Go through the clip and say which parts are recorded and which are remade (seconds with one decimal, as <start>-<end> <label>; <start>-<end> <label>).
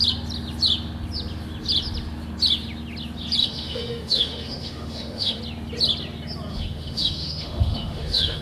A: 0.0-3.4 recorded; 3.4-5.4 remade; 5.4-6.5 recorded; 6.5-8.4 remade